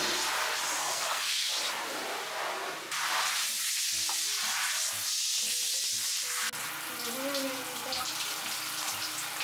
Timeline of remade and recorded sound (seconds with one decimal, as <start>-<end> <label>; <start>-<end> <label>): 0.0-0.8 recorded; 0.8-1.5 remade; 1.5-9.4 recorded